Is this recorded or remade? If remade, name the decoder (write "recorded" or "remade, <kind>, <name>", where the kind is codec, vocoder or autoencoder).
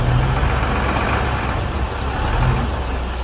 recorded